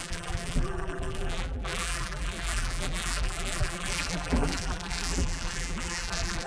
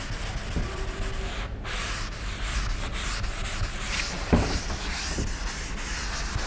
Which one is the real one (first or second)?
second